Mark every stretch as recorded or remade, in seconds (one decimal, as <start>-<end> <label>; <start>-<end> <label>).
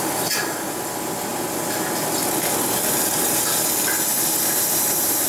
0.0-5.3 recorded